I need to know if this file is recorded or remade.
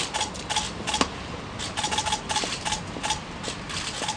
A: recorded